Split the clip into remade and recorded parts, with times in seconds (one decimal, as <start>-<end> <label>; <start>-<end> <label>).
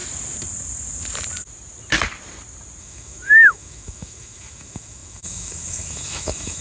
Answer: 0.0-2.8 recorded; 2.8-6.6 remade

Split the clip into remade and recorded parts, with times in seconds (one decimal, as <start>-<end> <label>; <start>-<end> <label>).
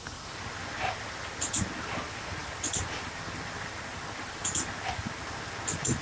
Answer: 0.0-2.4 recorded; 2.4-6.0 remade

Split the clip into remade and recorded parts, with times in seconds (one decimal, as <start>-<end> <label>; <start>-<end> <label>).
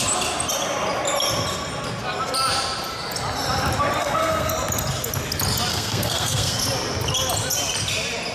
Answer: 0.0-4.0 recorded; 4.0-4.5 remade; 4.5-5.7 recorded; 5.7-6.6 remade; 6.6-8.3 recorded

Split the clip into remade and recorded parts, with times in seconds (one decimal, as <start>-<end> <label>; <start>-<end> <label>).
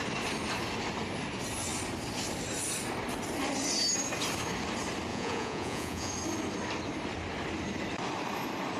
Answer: 0.0-5.1 recorded; 5.1-6.1 remade; 6.1-8.8 recorded